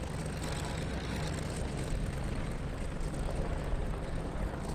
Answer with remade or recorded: recorded